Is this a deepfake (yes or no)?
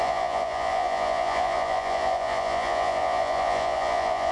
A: yes